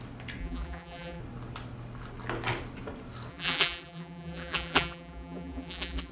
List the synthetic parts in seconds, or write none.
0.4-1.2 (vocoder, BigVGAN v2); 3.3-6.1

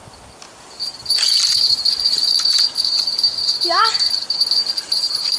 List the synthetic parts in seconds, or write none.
1.7-5.4 (vocoder, BigVGAN v2)

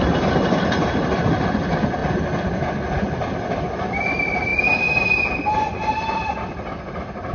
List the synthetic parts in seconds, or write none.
0.0-2.0 (vocoder, BigVGAN v2); 3.8-4.5; 5.9-7.3

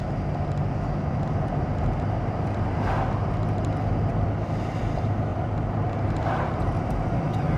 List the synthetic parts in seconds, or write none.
4.1-4.8 (vocoder, BigVGAN v2); 5.3-6.5

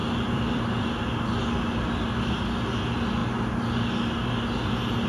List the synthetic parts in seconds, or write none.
0.0-0.8 (vocoder, BigVGAN v2)

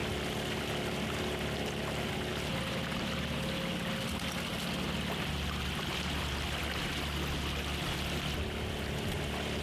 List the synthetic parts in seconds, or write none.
none

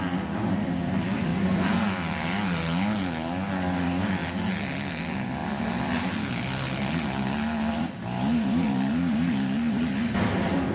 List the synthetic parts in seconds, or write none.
0.0-1.3 (vocoder, BigVGAN v2); 3.5-4.2; 5.0-5.4; 7.7-10.7

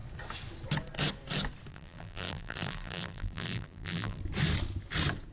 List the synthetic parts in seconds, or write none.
1.7-4.2 (vocoder, BigVGAN v2)